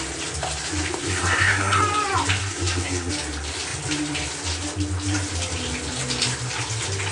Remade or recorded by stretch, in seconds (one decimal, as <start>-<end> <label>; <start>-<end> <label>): 0.0-1.0 recorded; 1.0-1.8 remade; 1.8-2.4 recorded; 2.4-3.1 remade; 3.1-7.1 recorded